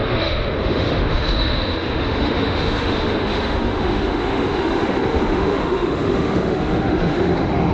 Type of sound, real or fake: fake